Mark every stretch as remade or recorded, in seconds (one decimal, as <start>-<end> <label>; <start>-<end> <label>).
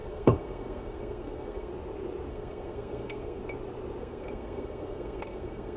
0.0-1.7 remade; 1.7-2.3 recorded; 2.3-3.4 remade; 3.4-4.0 recorded; 4.0-5.8 remade